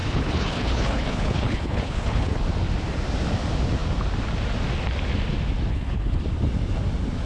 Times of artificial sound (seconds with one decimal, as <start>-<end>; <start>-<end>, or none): 0.0-2.4; 5.7-6.2